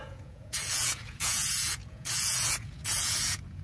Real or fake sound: fake